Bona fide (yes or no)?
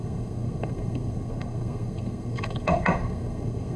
no